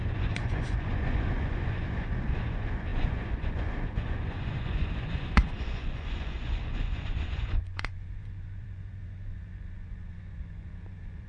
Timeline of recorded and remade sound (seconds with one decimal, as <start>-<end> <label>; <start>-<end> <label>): 0.0-11.3 remade